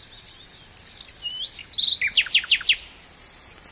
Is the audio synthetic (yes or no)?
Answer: no